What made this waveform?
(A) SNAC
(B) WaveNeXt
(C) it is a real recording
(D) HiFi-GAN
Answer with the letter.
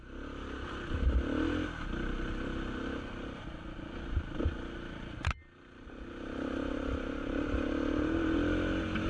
C